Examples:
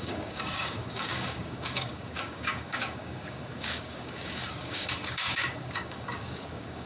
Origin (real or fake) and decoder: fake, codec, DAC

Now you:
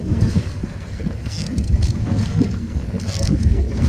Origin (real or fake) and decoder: fake, codec, SNAC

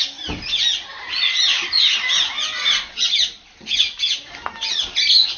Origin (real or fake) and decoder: real